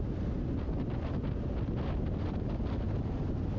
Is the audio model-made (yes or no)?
no